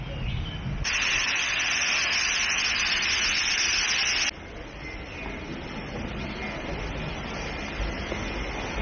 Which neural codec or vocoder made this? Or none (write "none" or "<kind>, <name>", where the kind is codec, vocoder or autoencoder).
none